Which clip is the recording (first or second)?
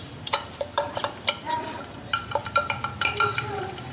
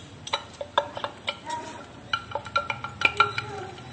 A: second